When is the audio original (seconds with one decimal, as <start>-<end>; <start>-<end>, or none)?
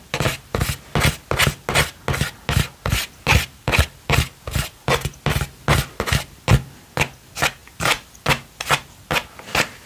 0.0-9.9